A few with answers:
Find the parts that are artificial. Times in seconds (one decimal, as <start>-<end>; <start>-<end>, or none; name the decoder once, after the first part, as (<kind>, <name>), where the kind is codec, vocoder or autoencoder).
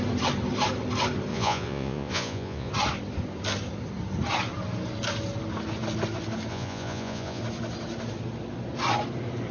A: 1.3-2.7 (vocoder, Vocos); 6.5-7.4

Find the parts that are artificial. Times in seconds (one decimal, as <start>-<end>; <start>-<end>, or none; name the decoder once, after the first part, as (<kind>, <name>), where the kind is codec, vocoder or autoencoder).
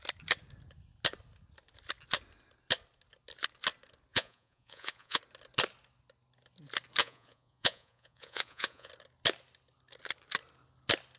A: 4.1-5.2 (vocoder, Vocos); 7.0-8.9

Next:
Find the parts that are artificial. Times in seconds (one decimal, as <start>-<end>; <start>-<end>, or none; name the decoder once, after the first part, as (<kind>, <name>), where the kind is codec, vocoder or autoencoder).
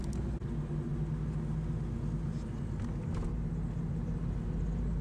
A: none